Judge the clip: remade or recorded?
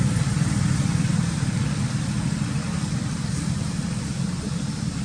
recorded